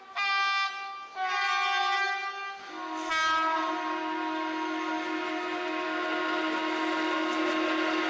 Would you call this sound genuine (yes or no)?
yes